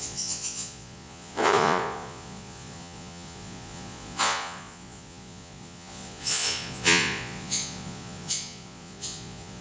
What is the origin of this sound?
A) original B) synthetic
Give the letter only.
B